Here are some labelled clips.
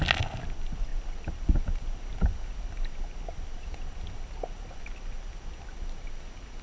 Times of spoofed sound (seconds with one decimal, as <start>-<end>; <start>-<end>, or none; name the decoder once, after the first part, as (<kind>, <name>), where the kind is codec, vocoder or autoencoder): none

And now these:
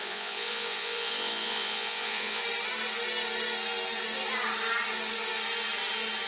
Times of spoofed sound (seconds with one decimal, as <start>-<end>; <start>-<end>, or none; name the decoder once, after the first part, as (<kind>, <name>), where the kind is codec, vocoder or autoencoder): 0.0-2.4 (vocoder, Vocos)

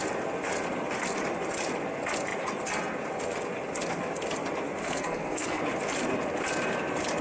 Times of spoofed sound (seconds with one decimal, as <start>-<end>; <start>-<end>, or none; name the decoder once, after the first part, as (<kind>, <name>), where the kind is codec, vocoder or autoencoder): 4.8-5.6 (codec, SNAC)

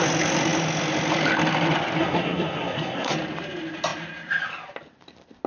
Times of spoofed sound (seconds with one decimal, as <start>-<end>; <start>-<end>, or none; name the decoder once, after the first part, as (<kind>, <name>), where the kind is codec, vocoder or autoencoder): 2.0-3.1 (codec, SNAC)

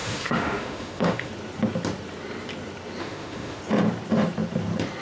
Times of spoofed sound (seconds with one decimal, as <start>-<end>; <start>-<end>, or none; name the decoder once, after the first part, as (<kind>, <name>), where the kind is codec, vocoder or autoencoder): 0.0-1.3 (autoencoder, DAC-VAE); 3.0-3.6

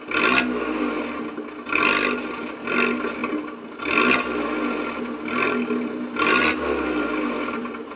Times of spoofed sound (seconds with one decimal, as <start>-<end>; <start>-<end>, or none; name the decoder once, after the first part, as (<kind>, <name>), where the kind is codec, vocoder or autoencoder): none

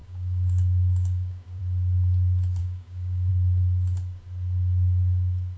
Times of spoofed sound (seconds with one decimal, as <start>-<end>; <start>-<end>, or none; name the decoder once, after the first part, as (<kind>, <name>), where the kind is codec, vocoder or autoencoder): 0.0-1.6 (codec, DAC); 2.6-3.3